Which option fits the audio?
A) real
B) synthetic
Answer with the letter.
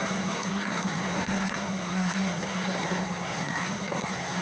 B